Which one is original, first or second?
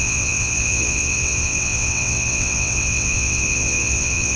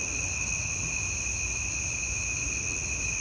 second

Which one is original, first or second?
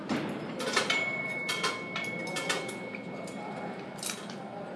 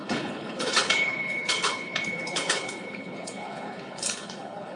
first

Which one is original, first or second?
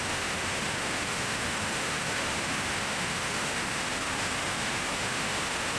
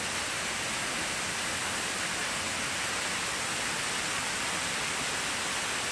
second